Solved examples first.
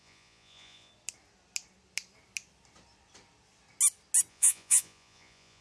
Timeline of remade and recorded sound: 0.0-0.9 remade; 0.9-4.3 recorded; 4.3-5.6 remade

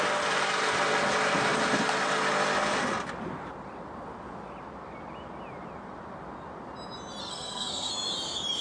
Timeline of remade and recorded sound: 0.0-7.2 recorded; 7.2-7.9 remade; 7.9-8.6 recorded

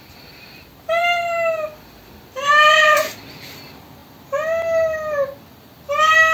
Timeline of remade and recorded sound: 0.0-6.3 recorded

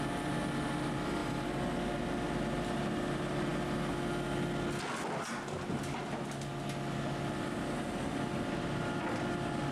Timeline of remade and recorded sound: 0.0-9.7 recorded